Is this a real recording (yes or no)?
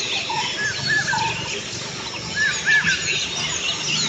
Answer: yes